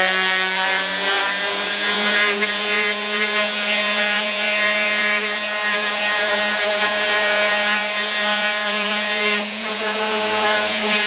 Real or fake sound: fake